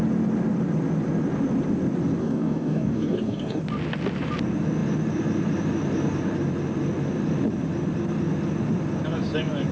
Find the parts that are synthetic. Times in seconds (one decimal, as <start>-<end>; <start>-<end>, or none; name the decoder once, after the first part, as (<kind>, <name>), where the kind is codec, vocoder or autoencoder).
2.2-3.6 (codec, DAC)